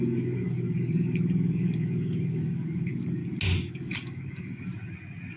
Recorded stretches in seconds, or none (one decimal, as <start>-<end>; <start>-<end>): 3.2-3.7; 4.7-5.4